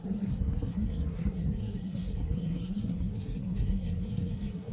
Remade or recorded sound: remade